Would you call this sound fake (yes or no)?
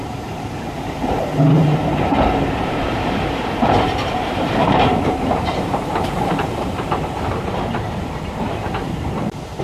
yes